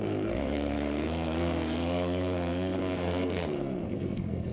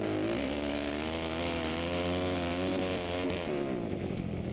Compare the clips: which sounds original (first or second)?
second